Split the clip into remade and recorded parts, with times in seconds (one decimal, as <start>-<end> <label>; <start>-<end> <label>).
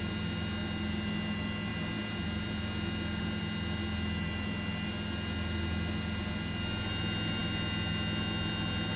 0.0-9.0 recorded